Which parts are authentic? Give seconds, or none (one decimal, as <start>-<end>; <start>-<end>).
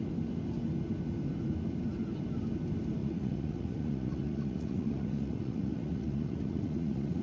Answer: 0.0-3.0